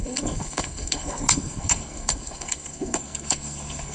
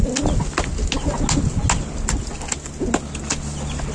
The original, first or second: second